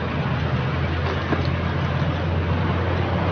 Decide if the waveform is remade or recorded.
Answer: recorded